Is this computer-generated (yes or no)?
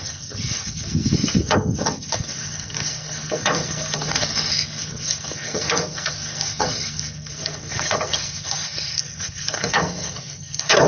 yes